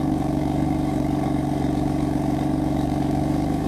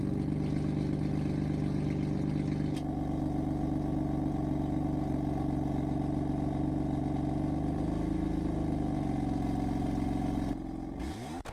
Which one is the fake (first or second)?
first